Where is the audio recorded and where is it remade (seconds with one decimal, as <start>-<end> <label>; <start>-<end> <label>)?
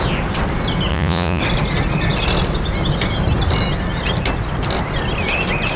0.0-0.9 recorded; 0.9-1.4 remade; 1.4-5.8 recorded